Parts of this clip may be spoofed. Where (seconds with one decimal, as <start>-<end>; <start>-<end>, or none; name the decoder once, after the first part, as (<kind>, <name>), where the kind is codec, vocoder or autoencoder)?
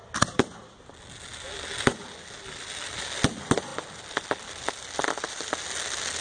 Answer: none